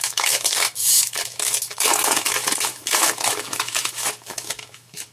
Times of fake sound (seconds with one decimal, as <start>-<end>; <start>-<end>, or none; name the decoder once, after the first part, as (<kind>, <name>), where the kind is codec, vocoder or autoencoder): 0.0-5.1 (autoencoder, DAC-VAE)